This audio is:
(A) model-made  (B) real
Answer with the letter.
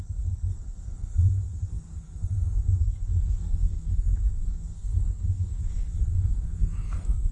A